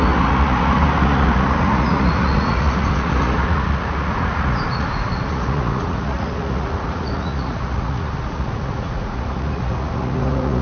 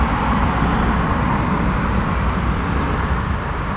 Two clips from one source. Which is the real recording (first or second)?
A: second